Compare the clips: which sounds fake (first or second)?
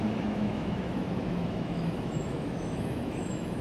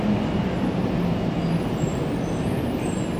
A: first